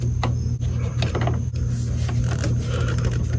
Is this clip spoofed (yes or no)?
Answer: no